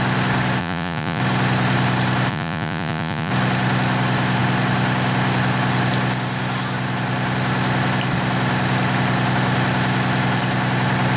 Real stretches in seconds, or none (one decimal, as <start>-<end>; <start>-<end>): 0.0-0.6; 1.2-2.3; 3.3-11.2